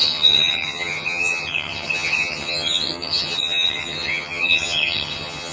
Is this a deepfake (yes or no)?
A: yes